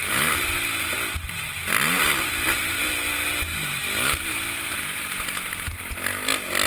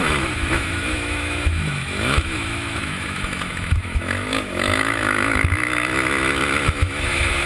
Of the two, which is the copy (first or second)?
second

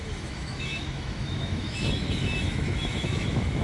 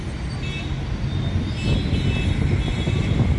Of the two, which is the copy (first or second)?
first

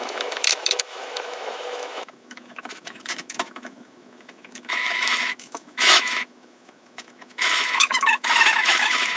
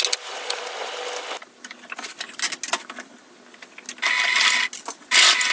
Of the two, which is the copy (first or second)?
first